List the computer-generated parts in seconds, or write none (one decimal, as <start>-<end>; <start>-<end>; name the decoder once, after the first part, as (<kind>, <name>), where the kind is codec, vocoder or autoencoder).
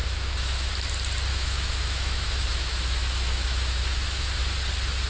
0.0-0.7 (autoencoder, DAC-VAE); 1.3-4.4